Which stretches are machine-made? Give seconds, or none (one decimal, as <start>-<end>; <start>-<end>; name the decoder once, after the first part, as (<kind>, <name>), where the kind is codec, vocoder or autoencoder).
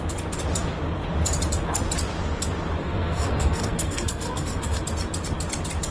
2.8-4.8 (codec, SNAC)